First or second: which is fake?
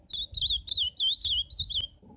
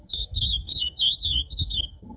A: second